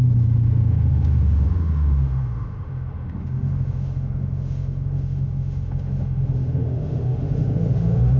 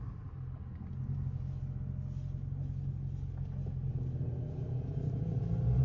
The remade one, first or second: first